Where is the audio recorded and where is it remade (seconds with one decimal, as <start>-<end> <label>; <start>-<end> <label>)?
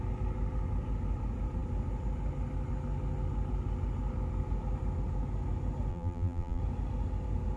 0.0-5.9 recorded; 5.9-6.6 remade; 6.6-7.6 recorded